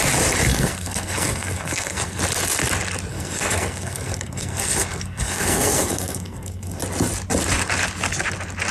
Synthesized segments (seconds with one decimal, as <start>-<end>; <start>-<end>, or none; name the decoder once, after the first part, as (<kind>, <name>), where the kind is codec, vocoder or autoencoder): 0.5-2.2 (codec, SNAC); 3.1-6.8

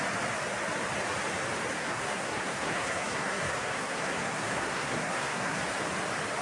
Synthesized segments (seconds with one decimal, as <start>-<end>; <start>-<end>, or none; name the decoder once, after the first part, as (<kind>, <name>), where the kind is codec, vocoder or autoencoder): 1.8-5.6 (codec, SNAC)

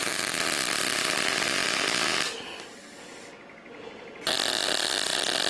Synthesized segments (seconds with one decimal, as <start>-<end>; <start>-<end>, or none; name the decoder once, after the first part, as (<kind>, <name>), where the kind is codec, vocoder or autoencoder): none

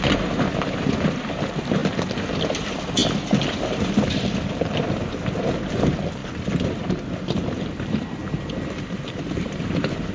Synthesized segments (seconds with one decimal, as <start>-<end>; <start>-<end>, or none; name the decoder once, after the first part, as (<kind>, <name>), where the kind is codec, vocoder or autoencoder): 0.0-1.8 (vocoder, BigVGAN v2); 2.6-3.0; 5.7-6.2; 7.2-8.2; 8.8-10.1

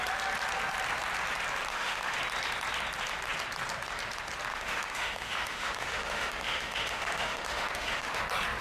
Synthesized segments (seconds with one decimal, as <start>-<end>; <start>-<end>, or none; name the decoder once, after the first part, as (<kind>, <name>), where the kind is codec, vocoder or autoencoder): 1.7-2.2 (autoencoder, DAC-VAE); 4.5-8.2

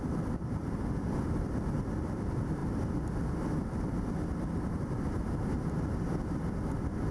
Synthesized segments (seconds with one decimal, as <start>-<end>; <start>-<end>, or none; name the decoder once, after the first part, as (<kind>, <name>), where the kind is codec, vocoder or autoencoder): 0.6-1.4 (vocoder, BigVGAN v2)

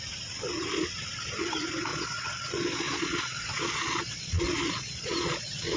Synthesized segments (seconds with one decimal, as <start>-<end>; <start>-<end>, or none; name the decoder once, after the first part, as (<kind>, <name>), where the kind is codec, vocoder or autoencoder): 1.9-5.8 (vocoder, Vocos)